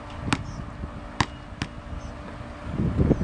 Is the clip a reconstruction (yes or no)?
no